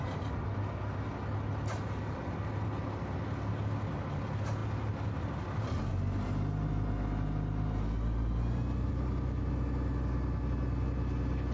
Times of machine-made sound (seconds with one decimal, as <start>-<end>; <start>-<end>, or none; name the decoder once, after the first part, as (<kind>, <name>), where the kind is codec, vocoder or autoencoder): none